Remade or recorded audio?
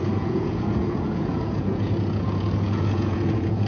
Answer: remade